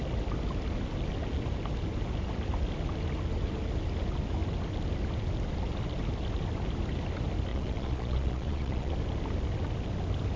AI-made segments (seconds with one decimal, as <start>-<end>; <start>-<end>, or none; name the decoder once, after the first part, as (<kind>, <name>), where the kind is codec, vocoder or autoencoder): 7.5-8.9 (vocoder, Vocos)